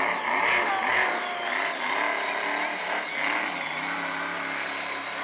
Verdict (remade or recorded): recorded